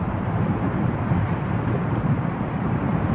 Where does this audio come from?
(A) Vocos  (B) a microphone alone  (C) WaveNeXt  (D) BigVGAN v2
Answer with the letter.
D